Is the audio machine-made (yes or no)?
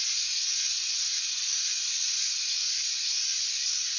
no